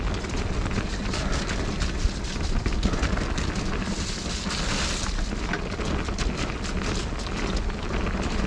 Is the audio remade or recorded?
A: recorded